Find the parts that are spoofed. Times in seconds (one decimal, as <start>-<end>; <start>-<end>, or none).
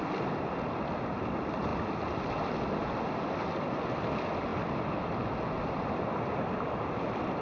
none